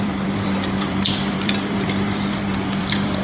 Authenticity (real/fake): fake